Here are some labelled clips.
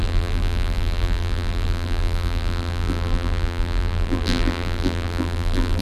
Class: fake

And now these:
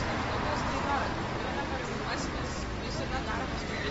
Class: real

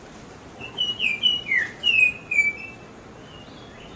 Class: real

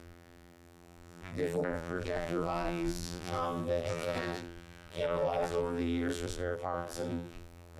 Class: fake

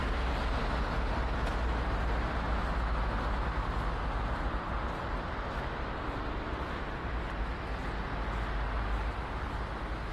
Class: real